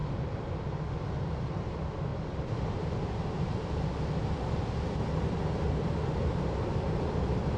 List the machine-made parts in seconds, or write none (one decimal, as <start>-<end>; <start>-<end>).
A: 0.0-1.1